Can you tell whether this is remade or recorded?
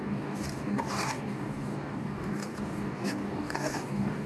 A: remade